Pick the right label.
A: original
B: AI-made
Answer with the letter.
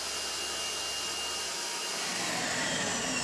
A